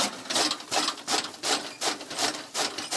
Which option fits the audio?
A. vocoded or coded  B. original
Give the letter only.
B